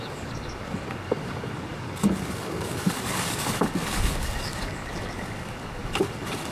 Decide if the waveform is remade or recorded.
remade